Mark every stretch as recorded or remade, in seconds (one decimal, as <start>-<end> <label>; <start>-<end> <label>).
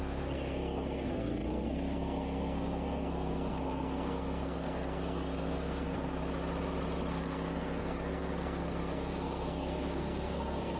0.0-6.2 remade; 6.2-7.1 recorded; 7.1-10.8 remade